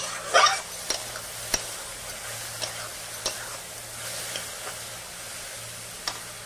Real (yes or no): yes